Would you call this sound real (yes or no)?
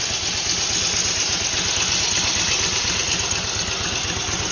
yes